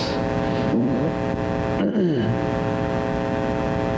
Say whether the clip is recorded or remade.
recorded